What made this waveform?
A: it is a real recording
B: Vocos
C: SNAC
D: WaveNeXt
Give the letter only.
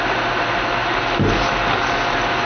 A